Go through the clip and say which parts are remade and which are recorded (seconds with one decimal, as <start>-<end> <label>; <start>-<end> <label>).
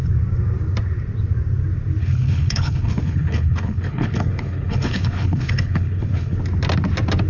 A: 0.0-2.0 recorded; 2.0-6.4 remade; 6.4-7.3 recorded